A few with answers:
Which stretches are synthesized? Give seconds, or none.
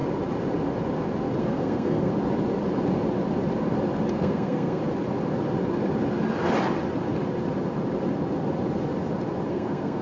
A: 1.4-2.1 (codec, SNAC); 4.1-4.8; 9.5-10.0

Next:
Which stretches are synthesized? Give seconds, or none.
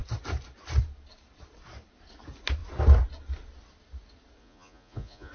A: 4.4-5.3 (vocoder, Vocos)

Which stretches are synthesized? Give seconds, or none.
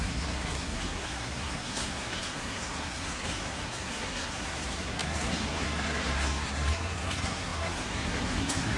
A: 0.0-8.8 (codec, SNAC)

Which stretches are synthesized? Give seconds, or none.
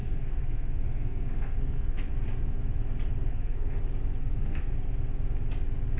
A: 0.0-2.1 (codec, SNAC); 3.3-3.8; 4.2-4.7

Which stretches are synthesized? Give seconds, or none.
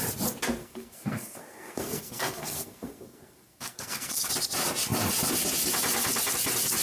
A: 0.6-4.3 (codec, SNAC)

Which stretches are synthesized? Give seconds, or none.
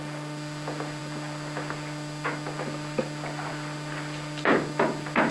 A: none